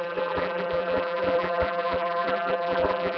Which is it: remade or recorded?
remade